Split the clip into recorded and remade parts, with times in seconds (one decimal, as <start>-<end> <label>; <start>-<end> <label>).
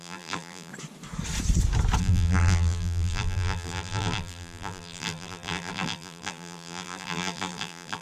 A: 0.0-0.7 remade; 0.7-2.0 recorded; 2.0-8.0 remade